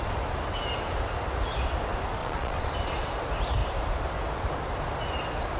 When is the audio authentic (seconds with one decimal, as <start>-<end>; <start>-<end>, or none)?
0.0-2.2; 2.7-5.6